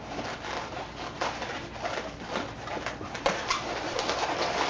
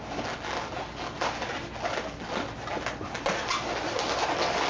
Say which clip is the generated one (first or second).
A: first